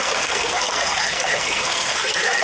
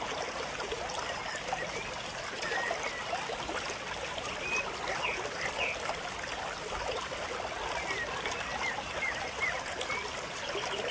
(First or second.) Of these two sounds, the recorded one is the second